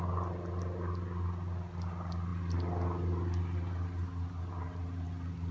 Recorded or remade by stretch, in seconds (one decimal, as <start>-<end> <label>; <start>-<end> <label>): 0.0-5.5 recorded